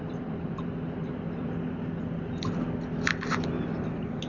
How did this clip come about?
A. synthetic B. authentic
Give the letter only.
B